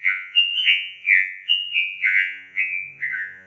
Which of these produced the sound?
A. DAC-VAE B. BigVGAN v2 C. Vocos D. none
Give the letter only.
C